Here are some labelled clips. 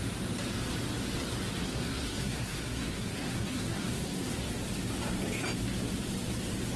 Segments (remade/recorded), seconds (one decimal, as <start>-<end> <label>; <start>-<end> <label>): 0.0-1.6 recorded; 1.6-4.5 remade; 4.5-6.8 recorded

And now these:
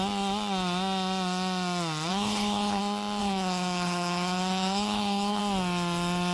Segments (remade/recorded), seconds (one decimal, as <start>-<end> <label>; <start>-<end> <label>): 0.0-2.1 recorded; 2.1-2.8 remade; 2.8-3.2 recorded; 3.2-5.4 remade; 5.4-6.3 recorded

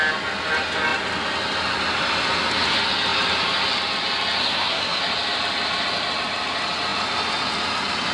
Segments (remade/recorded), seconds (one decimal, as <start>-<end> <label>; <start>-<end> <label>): 0.0-4.4 recorded; 4.4-5.0 remade; 5.0-8.1 recorded

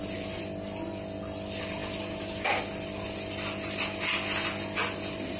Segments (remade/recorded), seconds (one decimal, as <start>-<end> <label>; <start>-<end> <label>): 0.0-5.4 recorded

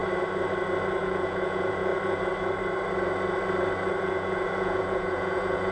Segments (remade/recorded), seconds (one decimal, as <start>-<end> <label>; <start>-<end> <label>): 0.0-1.0 recorded; 1.0-1.9 remade; 1.9-4.0 recorded; 4.0-5.7 remade

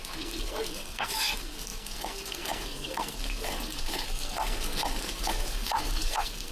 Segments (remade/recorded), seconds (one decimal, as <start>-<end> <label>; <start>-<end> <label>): 0.0-6.5 remade